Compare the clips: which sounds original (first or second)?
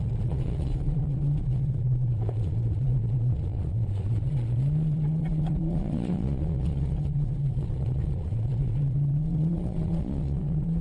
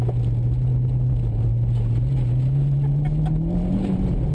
second